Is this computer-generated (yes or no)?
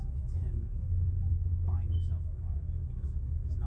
yes